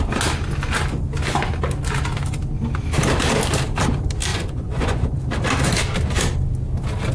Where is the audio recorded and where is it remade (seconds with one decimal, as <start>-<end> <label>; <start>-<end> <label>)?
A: 0.0-4.3 recorded; 4.3-5.2 remade; 5.2-7.1 recorded